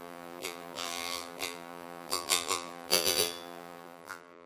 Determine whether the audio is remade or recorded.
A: remade